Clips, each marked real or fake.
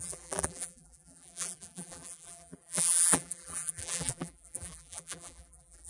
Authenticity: fake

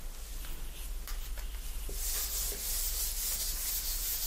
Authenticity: real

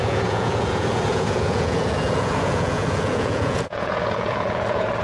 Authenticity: fake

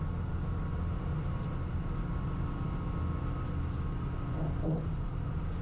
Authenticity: real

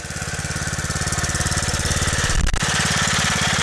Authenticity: real